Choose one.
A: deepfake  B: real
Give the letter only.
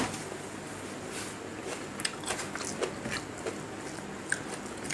B